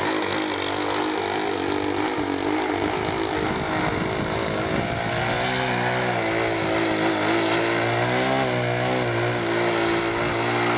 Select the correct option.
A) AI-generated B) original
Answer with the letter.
B